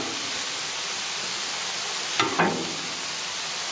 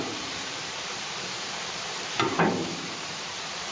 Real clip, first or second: first